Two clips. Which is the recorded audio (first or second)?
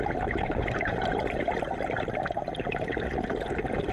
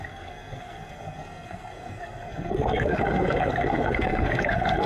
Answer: first